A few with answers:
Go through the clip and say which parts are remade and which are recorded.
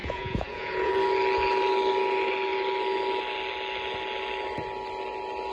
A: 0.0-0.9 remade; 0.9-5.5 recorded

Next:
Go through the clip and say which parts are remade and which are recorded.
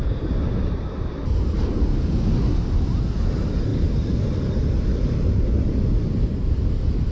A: 0.0-1.2 remade; 1.2-7.1 recorded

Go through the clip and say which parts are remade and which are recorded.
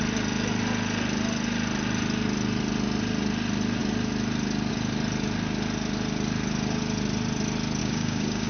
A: 0.0-7.8 recorded; 7.8-8.5 remade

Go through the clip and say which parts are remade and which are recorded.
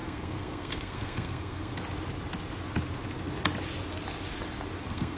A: 0.0-1.7 remade; 1.7-4.8 recorded; 4.8-5.2 remade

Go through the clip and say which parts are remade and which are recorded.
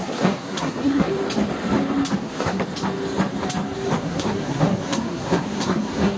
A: 0.0-1.1 remade; 1.1-2.2 recorded; 2.2-2.6 remade; 2.6-4.0 recorded; 4.0-6.2 remade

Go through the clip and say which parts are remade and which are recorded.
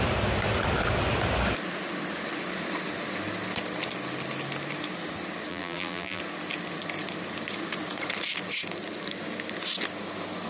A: 0.0-5.5 recorded; 5.5-6.2 remade; 6.2-10.5 recorded